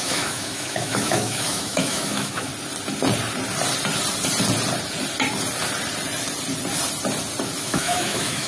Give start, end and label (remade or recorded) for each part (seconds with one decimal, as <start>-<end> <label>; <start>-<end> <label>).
0.0-2.5 remade; 2.5-7.6 recorded; 7.6-8.5 remade